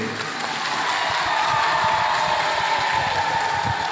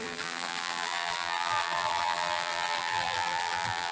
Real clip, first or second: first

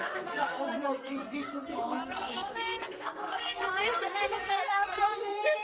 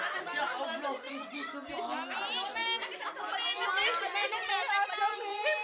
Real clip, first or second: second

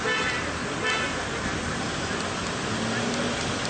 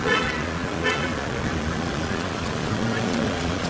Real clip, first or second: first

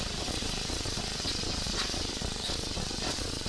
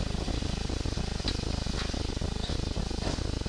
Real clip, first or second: second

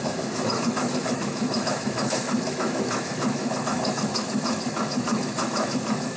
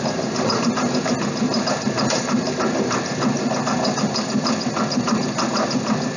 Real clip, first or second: second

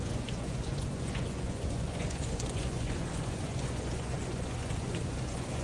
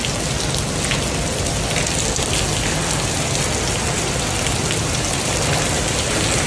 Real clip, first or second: second